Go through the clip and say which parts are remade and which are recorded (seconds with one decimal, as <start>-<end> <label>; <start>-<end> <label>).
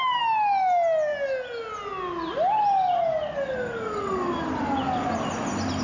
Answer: 0.0-5.8 recorded